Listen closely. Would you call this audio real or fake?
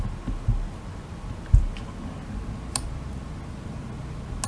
real